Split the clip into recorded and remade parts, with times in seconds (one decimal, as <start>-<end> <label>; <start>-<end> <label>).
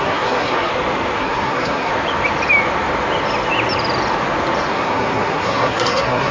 0.0-0.7 remade; 0.7-1.2 recorded; 1.2-1.9 remade; 1.9-4.7 recorded; 4.7-6.3 remade